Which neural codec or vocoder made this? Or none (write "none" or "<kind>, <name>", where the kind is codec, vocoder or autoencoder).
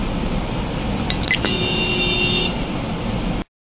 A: none